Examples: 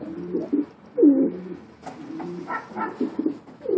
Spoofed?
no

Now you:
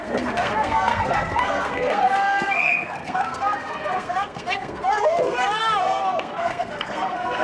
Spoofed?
yes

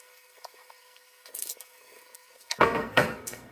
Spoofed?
yes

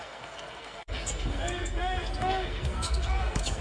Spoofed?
yes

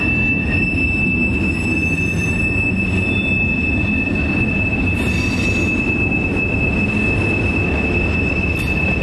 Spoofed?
no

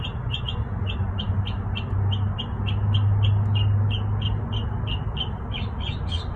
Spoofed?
no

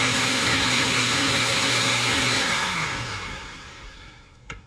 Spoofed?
yes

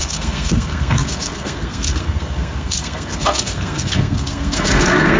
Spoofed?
yes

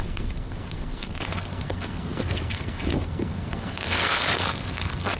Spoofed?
yes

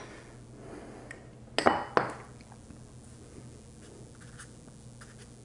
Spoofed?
no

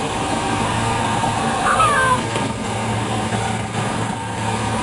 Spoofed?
yes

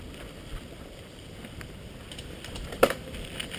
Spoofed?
no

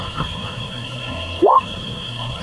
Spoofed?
yes